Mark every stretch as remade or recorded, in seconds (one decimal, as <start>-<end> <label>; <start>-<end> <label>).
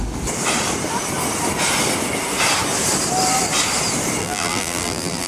0.0-4.2 recorded; 4.2-5.3 remade